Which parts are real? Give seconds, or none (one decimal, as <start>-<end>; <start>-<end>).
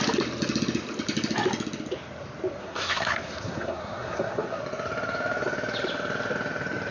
0.0-2.6; 4.6-6.9